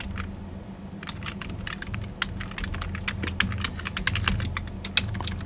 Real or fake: real